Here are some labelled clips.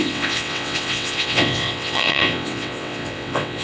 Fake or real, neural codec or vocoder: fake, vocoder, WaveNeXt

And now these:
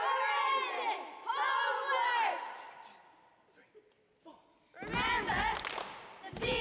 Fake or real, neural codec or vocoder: real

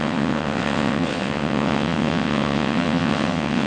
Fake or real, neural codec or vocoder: fake, vocoder, WaveNeXt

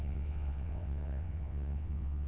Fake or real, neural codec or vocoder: fake, vocoder, WaveNeXt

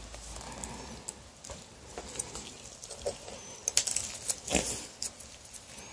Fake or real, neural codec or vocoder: real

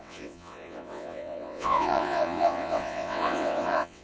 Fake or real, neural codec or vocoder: fake, vocoder, WaveNeXt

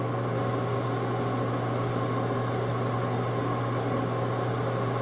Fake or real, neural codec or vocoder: real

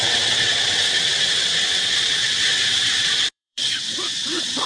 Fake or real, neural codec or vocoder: fake, vocoder, WaveNeXt